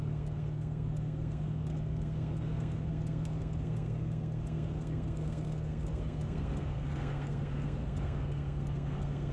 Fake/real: fake